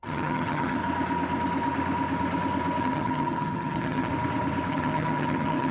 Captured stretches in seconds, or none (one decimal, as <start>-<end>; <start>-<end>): 0.8-2.8; 4.1-4.7